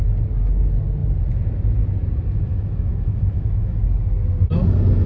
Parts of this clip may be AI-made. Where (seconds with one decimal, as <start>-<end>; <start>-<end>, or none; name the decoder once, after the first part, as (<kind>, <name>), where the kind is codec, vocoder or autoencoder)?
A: 2.5-3.8 (autoencoder, DAC-VAE)